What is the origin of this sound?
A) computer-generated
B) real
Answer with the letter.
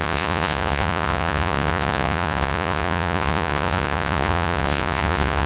A